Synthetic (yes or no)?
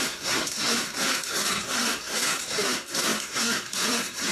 yes